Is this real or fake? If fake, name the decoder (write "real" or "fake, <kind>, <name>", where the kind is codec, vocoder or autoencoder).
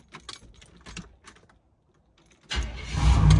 real